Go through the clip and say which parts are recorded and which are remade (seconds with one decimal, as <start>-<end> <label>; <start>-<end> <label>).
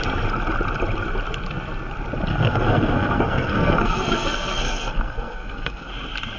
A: 0.0-2.3 recorded; 2.3-5.9 remade; 5.9-6.4 recorded